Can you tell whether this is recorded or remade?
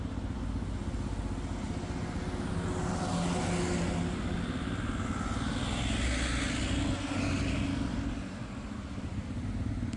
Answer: recorded